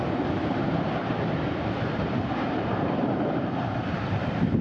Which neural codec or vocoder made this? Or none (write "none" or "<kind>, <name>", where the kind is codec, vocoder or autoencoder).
vocoder, BigVGAN v2